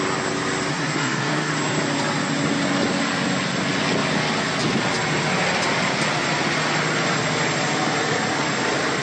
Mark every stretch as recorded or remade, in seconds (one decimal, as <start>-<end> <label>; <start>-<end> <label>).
0.0-0.7 recorded; 0.7-1.5 remade; 1.5-9.0 recorded